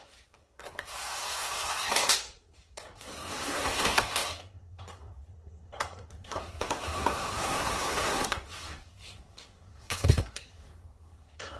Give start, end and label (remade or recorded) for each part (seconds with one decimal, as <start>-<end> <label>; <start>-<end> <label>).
0.0-11.6 remade